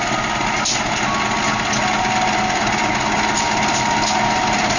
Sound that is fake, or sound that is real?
real